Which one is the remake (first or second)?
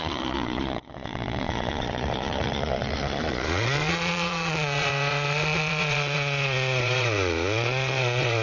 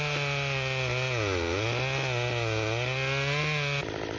first